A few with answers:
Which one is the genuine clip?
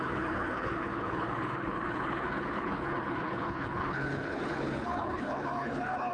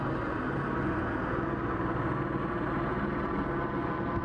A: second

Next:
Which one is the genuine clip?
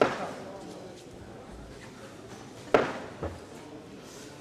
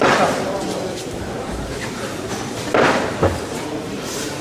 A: first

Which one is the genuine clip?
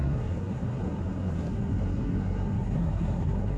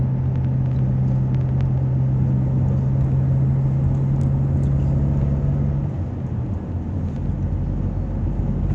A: second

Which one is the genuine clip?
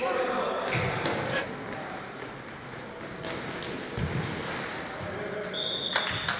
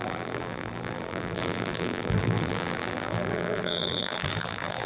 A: first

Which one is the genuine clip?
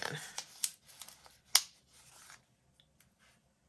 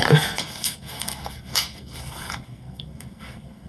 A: first